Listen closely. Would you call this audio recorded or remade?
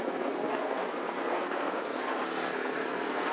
remade